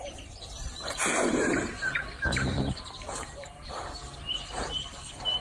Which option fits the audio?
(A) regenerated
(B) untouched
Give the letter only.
A